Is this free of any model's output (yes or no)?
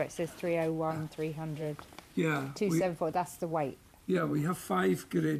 no